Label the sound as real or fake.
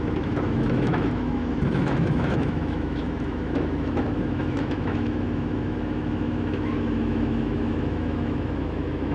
fake